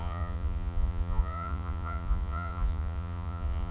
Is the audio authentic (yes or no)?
no